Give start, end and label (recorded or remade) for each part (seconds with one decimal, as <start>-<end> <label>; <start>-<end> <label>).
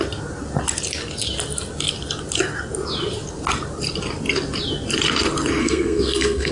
0.0-5.6 recorded; 5.6-6.5 remade